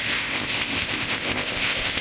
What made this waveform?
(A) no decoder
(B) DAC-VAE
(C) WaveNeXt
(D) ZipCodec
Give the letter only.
D